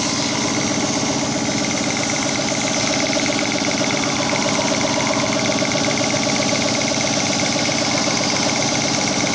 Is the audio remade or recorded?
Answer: recorded